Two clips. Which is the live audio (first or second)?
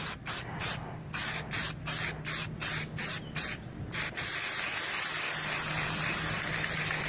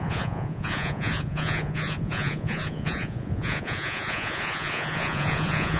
first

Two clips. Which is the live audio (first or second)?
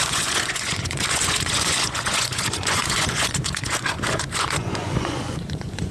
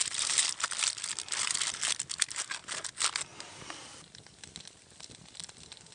second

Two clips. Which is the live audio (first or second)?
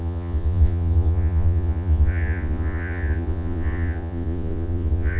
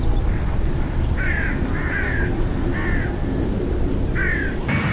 second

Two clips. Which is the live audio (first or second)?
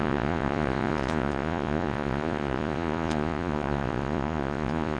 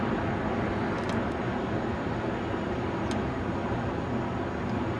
second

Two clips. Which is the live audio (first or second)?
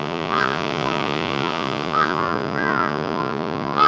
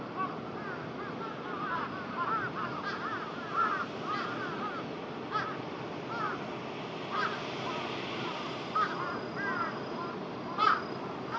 second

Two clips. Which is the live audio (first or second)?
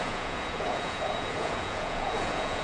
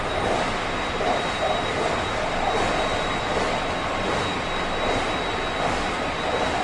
second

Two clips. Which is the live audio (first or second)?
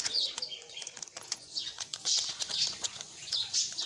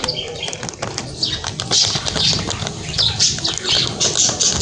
second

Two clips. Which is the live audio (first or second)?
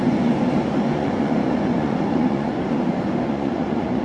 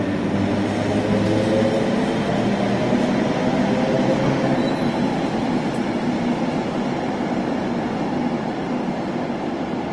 second